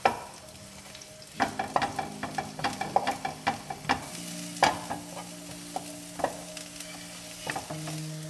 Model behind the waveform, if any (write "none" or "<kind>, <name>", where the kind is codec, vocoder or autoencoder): none